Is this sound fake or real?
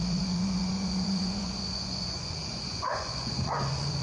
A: fake